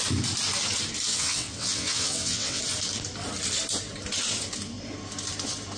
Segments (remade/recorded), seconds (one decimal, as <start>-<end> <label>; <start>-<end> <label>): 0.0-1.1 recorded; 1.1-2.6 remade; 2.6-5.8 recorded